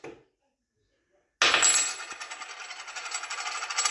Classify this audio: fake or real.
real